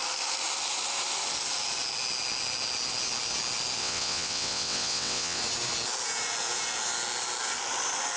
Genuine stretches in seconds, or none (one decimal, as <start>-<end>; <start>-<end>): 0.0-3.8; 5.4-8.2

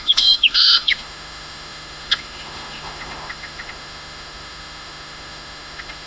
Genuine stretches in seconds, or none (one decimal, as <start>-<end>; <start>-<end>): none

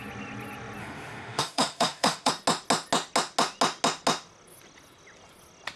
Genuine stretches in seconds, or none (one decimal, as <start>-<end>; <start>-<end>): 0.0-0.8; 2.3-5.8